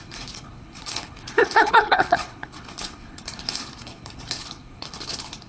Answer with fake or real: fake